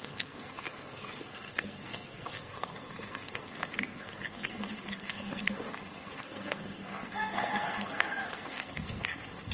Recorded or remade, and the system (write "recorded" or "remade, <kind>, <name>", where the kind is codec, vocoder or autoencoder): remade, codec, SNAC